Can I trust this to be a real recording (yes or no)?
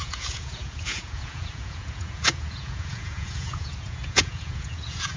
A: no